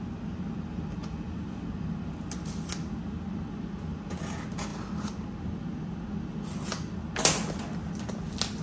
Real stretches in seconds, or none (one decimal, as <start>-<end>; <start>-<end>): 0.0-8.6